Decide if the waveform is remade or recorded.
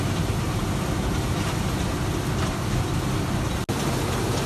recorded